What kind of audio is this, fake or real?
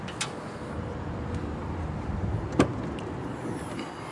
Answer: real